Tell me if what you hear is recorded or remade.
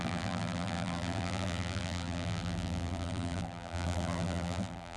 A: remade